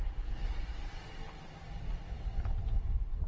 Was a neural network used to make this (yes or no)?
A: no